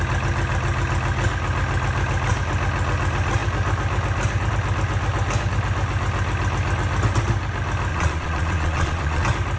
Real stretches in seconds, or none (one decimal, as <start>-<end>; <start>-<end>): 0.0-7.9; 9.2-9.6